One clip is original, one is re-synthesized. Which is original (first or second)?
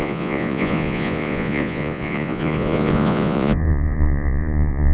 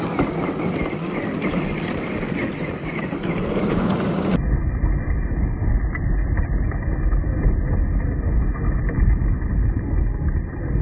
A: second